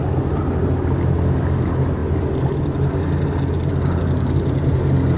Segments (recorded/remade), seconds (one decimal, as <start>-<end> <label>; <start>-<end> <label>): 0.0-5.2 recorded

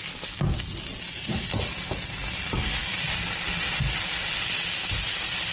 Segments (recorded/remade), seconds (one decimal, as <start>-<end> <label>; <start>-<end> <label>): 0.0-5.5 recorded

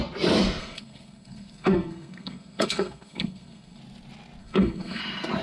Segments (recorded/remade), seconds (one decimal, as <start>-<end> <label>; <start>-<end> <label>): 0.0-0.6 recorded; 0.6-3.8 remade; 3.8-4.4 recorded; 4.4-5.0 remade; 5.0-5.4 recorded

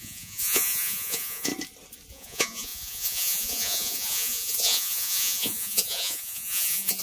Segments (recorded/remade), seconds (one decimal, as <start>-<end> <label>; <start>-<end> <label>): 0.0-1.5 remade; 1.5-2.1 recorded; 2.1-7.0 remade

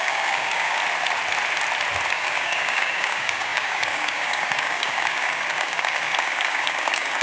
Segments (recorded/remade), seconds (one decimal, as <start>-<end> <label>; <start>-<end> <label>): 0.0-0.8 remade; 0.8-2.1 recorded; 2.1-7.2 remade

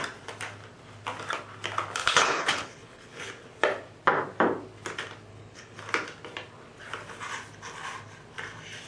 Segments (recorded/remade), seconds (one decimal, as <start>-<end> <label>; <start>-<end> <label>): 0.0-2.0 recorded; 2.0-3.3 remade; 3.3-5.3 recorded; 5.3-5.8 remade; 5.8-8.9 recorded